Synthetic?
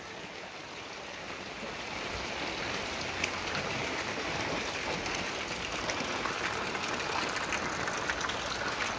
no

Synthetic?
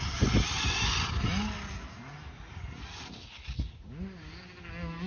no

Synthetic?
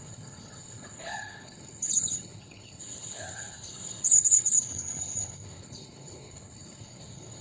yes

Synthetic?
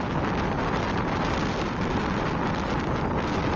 no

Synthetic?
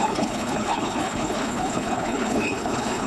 yes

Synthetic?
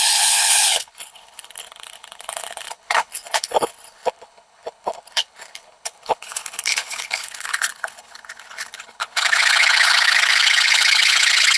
yes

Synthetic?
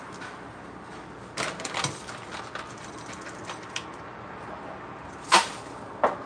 no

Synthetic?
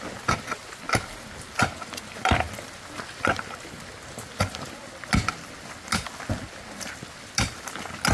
no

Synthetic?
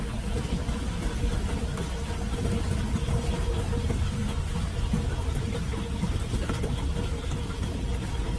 no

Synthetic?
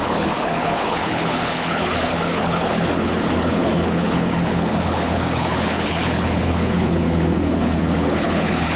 yes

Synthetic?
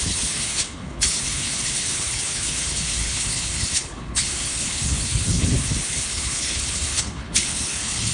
yes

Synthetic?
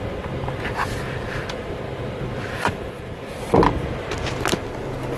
no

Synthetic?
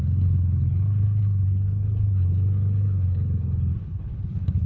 yes